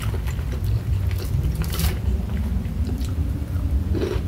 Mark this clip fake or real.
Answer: fake